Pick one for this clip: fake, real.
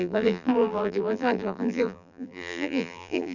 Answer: fake